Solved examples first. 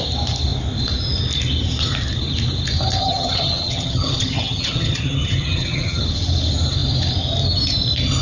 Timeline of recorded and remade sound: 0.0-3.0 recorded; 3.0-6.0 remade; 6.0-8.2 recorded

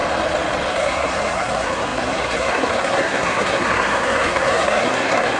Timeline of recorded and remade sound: 0.0-0.7 recorded; 0.7-5.4 remade

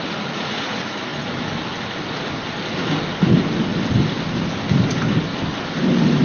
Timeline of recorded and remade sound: 0.0-6.2 recorded

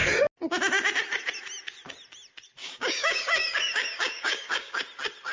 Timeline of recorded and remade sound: 0.0-2.6 recorded; 2.6-4.8 remade; 4.8-5.3 recorded

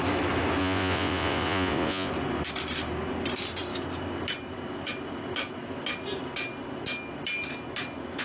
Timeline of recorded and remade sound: 0.0-0.6 recorded; 0.6-2.1 remade; 2.1-8.2 recorded

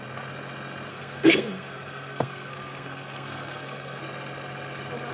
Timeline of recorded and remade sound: 0.0-0.9 recorded; 0.9-4.0 remade; 4.0-5.1 recorded

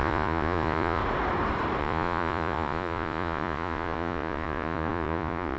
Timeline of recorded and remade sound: 0.0-1.0 remade; 1.0-1.8 recorded; 1.8-5.6 remade

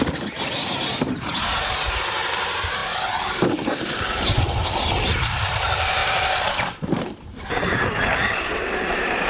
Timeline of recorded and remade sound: 0.0-9.3 remade